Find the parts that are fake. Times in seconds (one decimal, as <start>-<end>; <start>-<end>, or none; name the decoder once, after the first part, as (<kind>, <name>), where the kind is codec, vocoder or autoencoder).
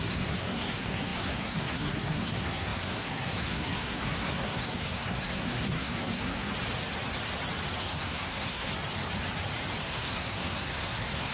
0.0-6.5 (codec, SNAC); 7.8-8.7; 9.8-11.3